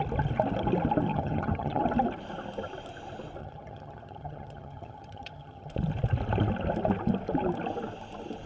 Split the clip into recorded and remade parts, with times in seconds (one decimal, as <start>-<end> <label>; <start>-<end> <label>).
0.0-1.1 recorded; 1.1-1.8 remade; 1.8-3.4 recorded; 3.4-5.7 remade; 5.7-8.5 recorded

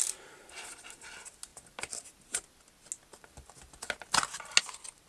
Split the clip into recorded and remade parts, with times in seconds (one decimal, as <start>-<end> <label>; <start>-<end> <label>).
0.0-5.1 recorded

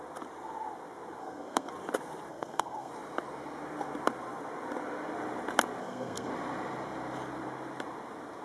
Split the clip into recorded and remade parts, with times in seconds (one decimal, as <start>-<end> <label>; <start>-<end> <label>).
0.0-1.2 recorded; 1.2-1.7 remade; 1.7-2.3 recorded; 2.3-2.9 remade; 2.9-5.8 recorded; 5.8-6.3 remade; 6.3-8.4 recorded

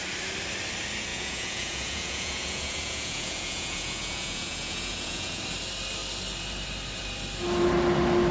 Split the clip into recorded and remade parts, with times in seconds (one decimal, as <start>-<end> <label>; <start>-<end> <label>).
0.0-1.1 recorded; 1.1-5.4 remade; 5.4-8.3 recorded

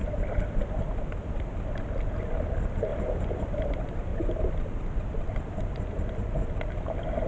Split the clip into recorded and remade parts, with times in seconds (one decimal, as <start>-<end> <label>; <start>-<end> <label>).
0.0-2.9 recorded; 2.9-3.6 remade; 3.6-4.1 recorded; 4.1-5.3 remade; 5.3-7.3 recorded

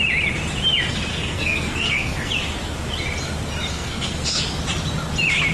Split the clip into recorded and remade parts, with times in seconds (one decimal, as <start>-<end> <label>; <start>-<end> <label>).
0.0-1.1 recorded; 1.1-2.3 remade; 2.3-3.7 recorded; 3.7-4.4 remade; 4.4-5.5 recorded

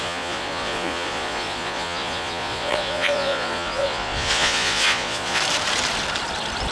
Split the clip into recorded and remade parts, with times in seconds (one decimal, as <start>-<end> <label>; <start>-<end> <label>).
0.0-5.4 remade; 5.4-6.7 recorded

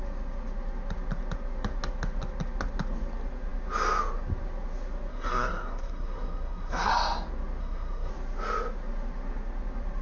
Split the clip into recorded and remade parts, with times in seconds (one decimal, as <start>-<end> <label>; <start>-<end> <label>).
0.0-5.1 recorded; 5.1-6.9 remade; 6.9-7.6 recorded; 7.6-8.1 remade; 8.1-10.0 recorded